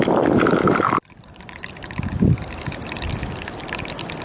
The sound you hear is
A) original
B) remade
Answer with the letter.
A